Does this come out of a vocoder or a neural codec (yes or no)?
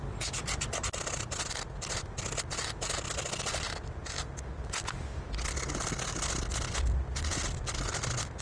no